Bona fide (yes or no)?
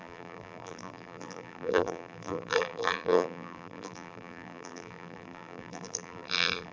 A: no